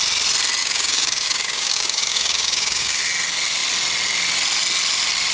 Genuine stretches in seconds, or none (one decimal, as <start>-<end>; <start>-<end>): 0.0-0.6; 3.0-5.3